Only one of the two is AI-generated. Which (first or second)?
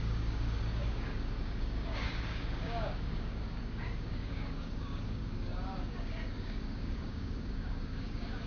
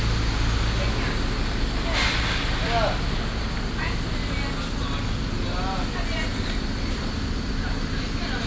first